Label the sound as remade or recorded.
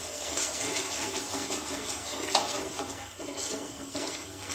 remade